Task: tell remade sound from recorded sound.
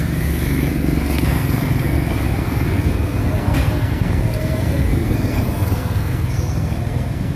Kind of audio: remade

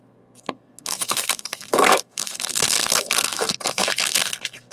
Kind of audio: remade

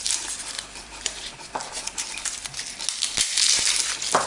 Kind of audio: recorded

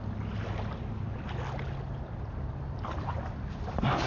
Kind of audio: recorded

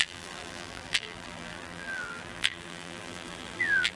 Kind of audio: remade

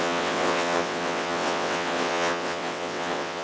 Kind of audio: remade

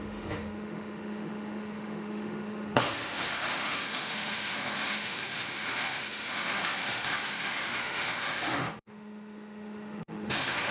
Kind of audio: remade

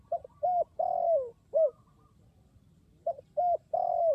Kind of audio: recorded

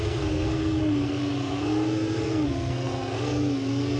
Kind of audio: remade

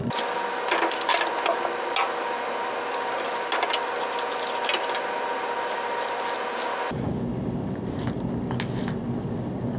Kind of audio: recorded